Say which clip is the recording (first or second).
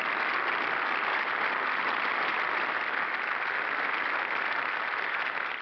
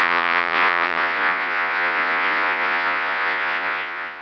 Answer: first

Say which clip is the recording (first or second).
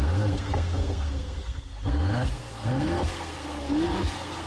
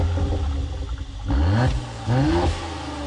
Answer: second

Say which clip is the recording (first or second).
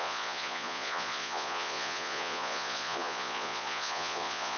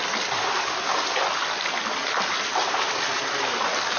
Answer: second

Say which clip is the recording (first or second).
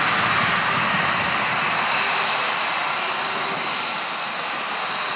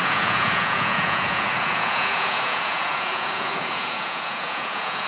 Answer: first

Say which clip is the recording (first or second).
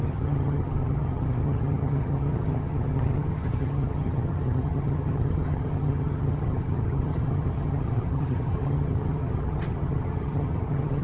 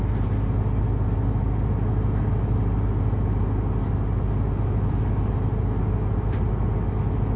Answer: second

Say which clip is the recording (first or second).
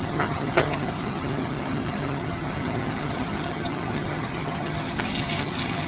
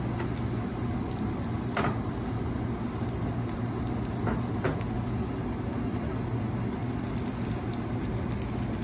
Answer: second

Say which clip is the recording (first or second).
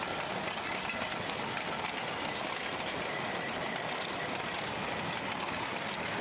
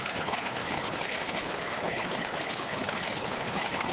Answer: first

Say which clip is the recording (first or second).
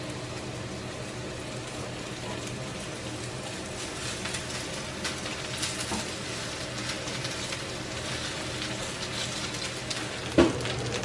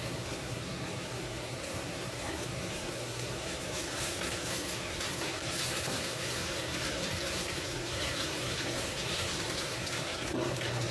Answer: first